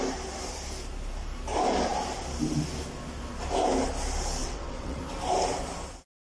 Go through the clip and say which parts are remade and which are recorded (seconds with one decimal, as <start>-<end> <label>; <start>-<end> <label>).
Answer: 0.0-4.4 recorded; 4.4-5.0 remade; 5.0-6.2 recorded